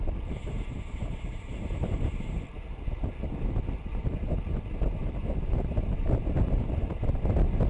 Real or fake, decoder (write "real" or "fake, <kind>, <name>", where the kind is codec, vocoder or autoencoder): real